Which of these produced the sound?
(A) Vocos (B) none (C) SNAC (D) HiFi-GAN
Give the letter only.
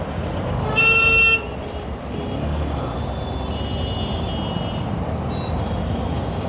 B